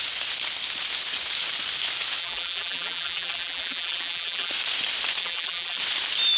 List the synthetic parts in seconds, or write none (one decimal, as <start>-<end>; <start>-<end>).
2.2-4.5; 5.2-5.8